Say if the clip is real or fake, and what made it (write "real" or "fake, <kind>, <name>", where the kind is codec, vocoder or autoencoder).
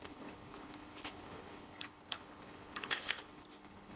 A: fake, codec, HILCodec